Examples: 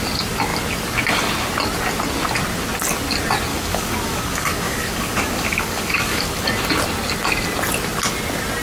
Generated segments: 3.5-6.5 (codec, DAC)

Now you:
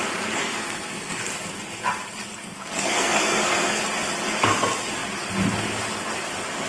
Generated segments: 0.4-1.2 (codec, SNAC); 2.4-3.8

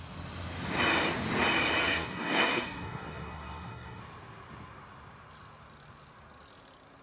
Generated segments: 1.8-4.0 (codec, SNAC)

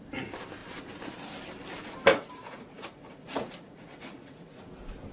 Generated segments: 2.1-4.6 (vocoder, Vocos)

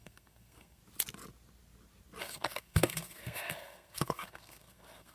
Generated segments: 0.0-0.8 (codec, SNAC); 2.2-5.1

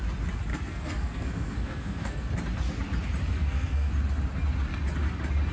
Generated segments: 0.5-2.3 (codec, SNAC); 3.3-3.9

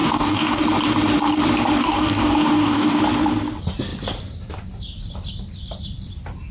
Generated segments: 0.0-0.6 (codec, DAC); 1.8-3.0